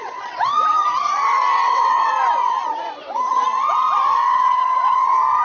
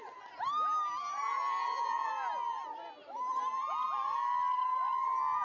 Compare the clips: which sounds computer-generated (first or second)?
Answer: first